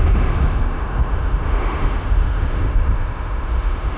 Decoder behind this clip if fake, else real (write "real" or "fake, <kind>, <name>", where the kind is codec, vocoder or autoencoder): fake, autoencoder, DAC-VAE